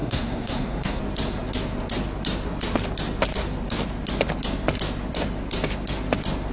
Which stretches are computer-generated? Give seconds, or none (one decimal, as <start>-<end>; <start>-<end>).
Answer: 0.0-1.0